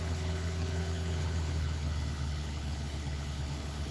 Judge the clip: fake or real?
fake